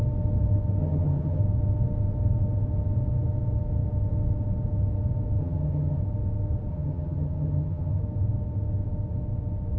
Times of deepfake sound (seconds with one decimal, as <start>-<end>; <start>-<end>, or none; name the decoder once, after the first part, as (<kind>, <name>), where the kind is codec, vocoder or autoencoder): 0.8-1.4 (vocoder, HiFi-GAN); 5.4-6.0; 6.7-8.0